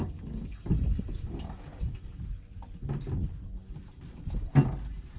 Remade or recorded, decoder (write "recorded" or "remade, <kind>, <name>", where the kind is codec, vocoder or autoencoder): recorded